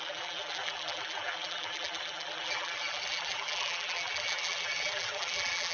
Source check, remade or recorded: remade